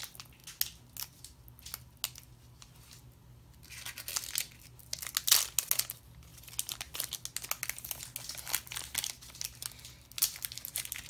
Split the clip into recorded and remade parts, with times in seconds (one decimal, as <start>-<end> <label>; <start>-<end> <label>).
0.0-11.1 recorded